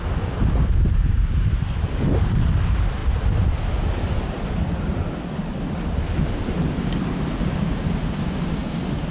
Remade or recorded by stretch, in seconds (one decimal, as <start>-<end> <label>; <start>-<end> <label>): 0.0-9.1 recorded